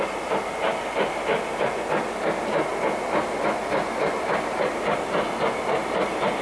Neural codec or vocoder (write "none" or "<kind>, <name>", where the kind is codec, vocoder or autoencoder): none